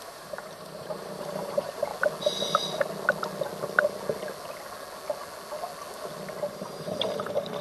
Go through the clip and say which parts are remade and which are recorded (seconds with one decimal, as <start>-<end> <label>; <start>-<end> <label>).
0.0-1.9 remade; 1.9-6.5 recorded; 6.5-7.6 remade